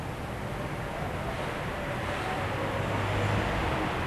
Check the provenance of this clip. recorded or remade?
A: recorded